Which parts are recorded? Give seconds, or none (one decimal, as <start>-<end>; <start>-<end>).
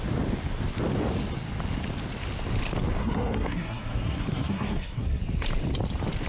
0.0-3.0; 5.2-6.3